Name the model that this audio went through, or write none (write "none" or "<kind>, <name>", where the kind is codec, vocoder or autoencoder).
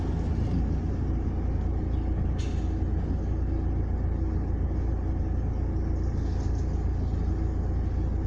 none